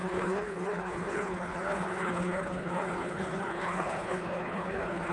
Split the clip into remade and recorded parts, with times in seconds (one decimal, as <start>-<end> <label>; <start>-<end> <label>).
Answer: 0.0-5.1 remade